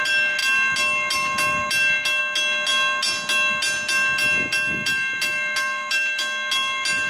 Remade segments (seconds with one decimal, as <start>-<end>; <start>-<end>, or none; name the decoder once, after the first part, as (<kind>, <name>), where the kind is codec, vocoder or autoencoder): none